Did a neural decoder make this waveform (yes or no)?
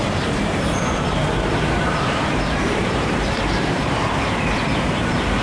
yes